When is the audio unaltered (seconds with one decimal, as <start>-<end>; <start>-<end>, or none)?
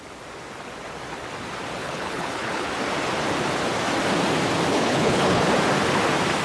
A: 0.0-1.8; 2.7-4.7; 5.4-6.4